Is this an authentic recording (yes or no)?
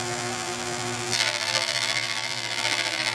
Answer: no